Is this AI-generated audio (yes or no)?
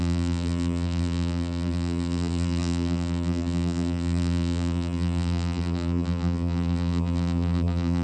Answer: yes